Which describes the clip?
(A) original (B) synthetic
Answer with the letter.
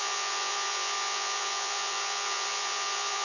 B